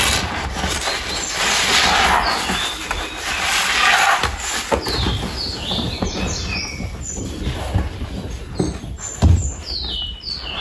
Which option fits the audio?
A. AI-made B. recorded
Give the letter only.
B